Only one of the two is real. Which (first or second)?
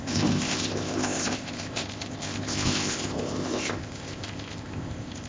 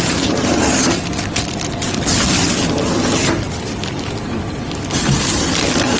second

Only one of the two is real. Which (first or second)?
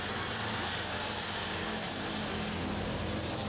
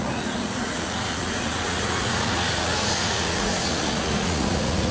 first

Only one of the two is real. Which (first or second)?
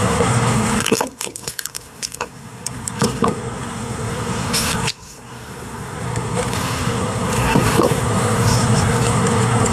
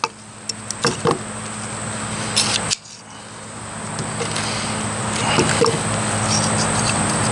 second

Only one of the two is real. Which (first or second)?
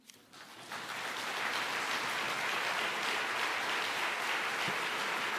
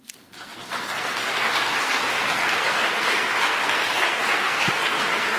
first